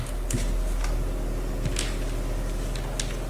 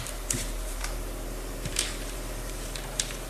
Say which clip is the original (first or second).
first